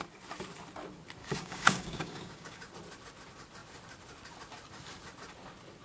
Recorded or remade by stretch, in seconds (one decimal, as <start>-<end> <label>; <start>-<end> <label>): 0.0-1.2 recorded; 1.2-2.7 remade; 2.7-5.8 recorded